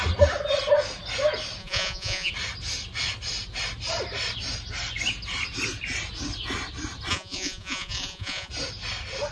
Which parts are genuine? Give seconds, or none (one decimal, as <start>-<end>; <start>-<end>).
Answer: 0.0-1.6; 2.3-7.1; 8.5-9.3